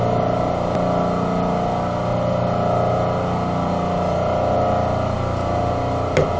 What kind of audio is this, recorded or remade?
recorded